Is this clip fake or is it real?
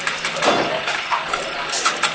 real